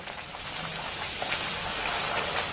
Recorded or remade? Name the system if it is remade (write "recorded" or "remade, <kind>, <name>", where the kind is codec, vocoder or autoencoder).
recorded